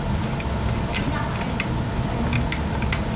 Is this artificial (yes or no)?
no